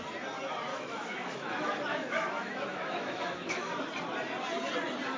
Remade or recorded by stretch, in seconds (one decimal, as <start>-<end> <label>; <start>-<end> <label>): 0.0-0.7 recorded; 0.7-3.8 remade; 3.8-5.2 recorded